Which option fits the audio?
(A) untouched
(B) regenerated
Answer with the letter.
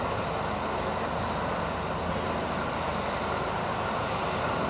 A